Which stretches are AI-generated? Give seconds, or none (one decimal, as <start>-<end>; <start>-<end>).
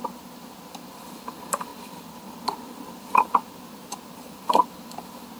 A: 1.7-3.6